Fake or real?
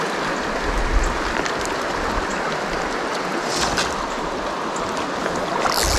real